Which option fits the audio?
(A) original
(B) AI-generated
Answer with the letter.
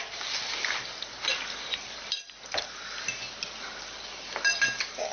A